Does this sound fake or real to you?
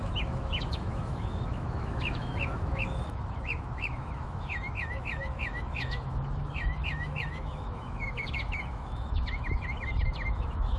fake